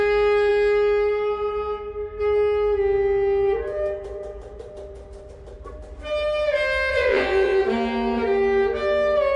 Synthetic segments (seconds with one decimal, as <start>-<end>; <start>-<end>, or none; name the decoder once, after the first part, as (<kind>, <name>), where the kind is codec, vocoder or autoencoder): 6.9-7.6 (vocoder, Vocos)